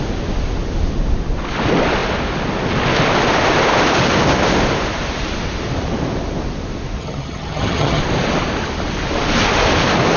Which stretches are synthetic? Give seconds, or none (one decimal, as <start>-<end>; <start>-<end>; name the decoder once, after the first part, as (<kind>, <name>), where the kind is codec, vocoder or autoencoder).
7.0-8.0 (vocoder, HiFi-GAN)